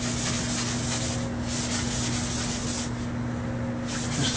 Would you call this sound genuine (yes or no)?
yes